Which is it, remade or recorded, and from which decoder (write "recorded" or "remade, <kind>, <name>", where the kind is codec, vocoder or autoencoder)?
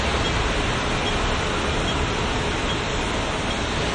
recorded